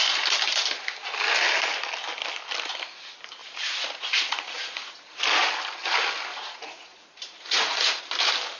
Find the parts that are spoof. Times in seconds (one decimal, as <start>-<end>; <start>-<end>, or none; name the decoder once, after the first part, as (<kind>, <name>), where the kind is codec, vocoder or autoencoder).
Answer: 3.4-5.2 (vocoder, Vocos); 6.3-8.0